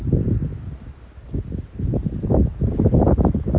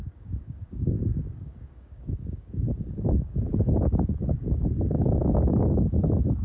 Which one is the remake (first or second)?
second